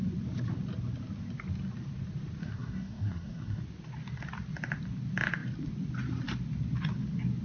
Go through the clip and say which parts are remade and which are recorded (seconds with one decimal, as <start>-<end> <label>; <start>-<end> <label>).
0.0-2.4 recorded; 2.4-3.6 remade; 3.6-7.4 recorded